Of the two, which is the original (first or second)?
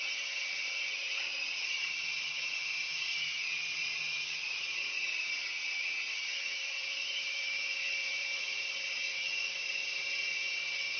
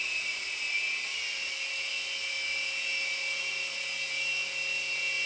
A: second